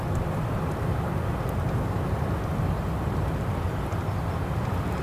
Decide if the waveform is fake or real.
real